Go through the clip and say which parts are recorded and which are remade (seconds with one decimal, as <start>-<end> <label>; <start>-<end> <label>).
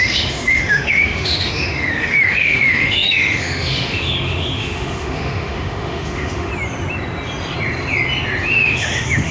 0.0-6.5 remade; 6.5-8.5 recorded; 8.5-9.3 remade